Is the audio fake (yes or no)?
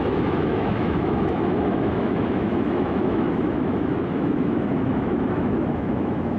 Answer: yes